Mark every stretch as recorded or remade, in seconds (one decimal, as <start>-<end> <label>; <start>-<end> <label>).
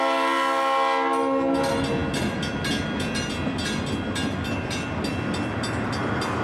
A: 0.0-6.4 recorded